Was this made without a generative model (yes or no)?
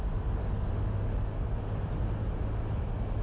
yes